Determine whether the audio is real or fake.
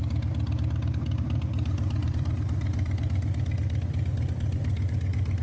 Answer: real